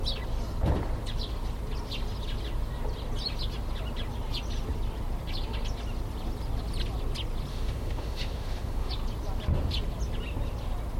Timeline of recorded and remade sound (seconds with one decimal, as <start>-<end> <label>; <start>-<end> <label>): 0.0-7.5 recorded; 7.5-8.9 remade; 8.9-11.0 recorded